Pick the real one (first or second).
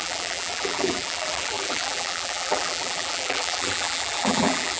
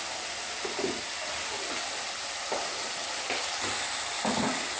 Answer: second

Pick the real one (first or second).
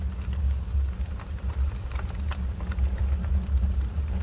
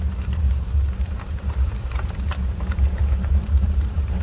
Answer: first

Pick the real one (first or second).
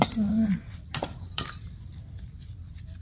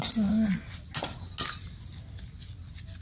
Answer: second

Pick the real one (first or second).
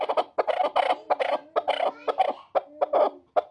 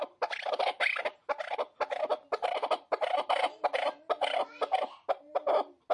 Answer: first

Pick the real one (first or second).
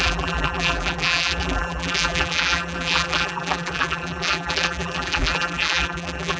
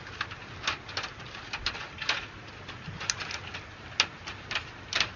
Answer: second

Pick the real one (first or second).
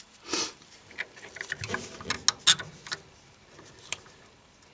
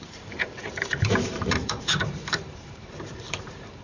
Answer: first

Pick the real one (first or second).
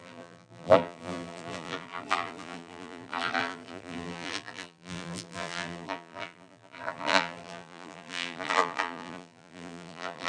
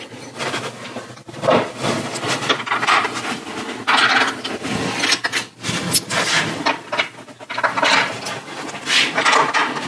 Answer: second